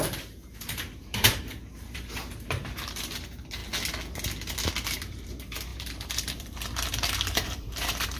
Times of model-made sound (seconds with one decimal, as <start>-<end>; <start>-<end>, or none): 0.0-3.6; 4.9-8.2